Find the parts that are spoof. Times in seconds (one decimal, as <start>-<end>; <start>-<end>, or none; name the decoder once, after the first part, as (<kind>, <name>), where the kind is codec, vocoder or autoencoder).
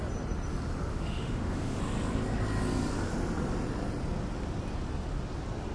0.9-1.8 (autoencoder, DAC-VAE)